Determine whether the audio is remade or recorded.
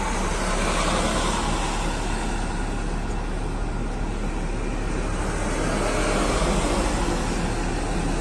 recorded